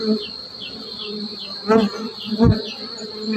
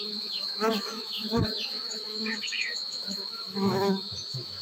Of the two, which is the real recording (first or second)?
first